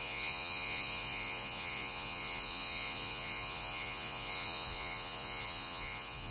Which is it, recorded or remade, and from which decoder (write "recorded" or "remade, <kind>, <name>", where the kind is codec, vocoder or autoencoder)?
remade, vocoder, Vocos